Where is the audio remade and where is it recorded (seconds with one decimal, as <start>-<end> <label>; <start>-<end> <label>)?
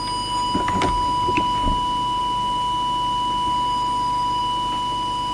0.0-5.3 recorded